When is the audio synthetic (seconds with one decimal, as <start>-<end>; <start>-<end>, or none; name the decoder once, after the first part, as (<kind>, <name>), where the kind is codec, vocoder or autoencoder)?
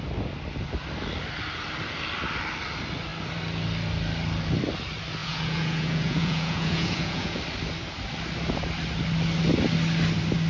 5.2-7.4 (vocoder, Vocos)